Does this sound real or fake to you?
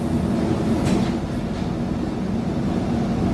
real